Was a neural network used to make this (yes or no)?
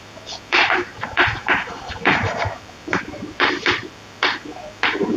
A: yes